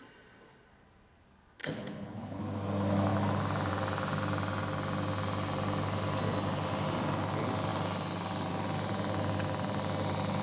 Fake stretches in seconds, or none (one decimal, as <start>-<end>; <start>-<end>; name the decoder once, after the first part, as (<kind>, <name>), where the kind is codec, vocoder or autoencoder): 1.6-2.4 (codec, HILCodec)